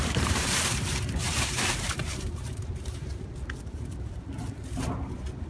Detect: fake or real fake